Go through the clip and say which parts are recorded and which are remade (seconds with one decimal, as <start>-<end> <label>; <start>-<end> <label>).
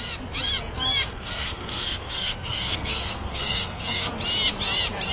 0.0-1.1 recorded; 1.1-4.1 remade; 4.1-5.1 recorded